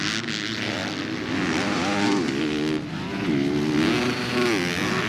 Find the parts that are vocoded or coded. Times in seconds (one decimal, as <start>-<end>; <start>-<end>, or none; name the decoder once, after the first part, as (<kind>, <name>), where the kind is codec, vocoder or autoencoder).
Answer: none